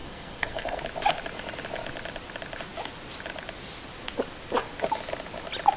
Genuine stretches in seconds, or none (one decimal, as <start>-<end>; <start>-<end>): 0.8-5.8